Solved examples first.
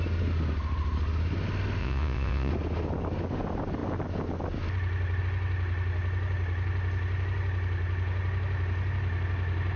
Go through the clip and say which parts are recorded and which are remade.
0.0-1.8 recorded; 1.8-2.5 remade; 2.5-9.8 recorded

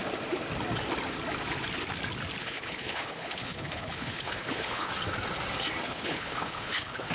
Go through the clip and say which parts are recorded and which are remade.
0.0-2.4 recorded; 2.4-4.9 remade; 4.9-5.9 recorded; 5.9-7.1 remade

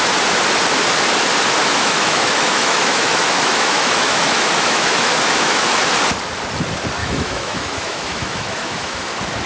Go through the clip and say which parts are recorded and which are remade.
0.0-1.6 recorded; 1.6-5.8 remade; 5.8-7.0 recorded; 7.0-9.1 remade; 9.1-9.5 recorded

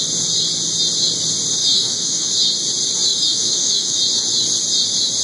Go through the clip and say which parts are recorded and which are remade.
0.0-1.6 recorded; 1.6-2.3 remade; 2.3-3.1 recorded; 3.1-4.0 remade; 4.0-5.2 recorded

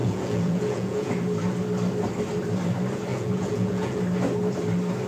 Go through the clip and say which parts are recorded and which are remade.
0.0-1.1 remade; 1.1-3.1 recorded; 3.1-4.0 remade; 4.0-5.1 recorded

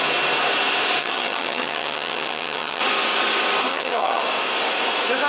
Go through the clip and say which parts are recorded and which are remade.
0.0-1.0 recorded; 1.0-2.8 remade; 2.8-3.7 recorded; 3.7-4.2 remade; 4.2-5.3 recorded